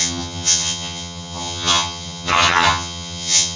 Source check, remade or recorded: remade